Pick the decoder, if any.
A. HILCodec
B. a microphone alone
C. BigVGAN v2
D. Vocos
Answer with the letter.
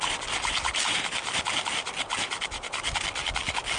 B